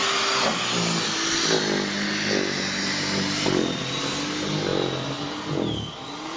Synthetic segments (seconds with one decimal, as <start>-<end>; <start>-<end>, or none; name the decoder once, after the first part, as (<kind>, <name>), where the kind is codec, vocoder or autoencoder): none